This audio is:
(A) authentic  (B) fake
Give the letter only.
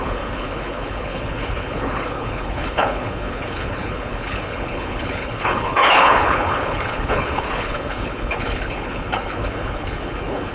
B